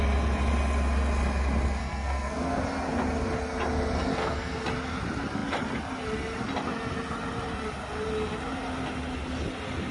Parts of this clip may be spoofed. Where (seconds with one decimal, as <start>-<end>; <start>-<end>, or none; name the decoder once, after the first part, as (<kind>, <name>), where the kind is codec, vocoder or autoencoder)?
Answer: 1.8-2.6 (codec, SNAC); 4.1-4.6